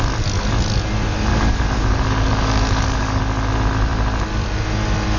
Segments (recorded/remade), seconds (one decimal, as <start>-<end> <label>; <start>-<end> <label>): 0.0-1.3 recorded; 1.3-3.2 remade; 3.2-5.2 recorded